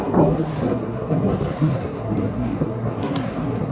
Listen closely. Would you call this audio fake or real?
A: fake